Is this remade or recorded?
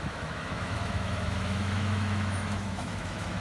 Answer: remade